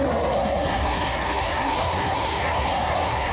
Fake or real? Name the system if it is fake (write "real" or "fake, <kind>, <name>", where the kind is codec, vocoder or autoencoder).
fake, codec, SNAC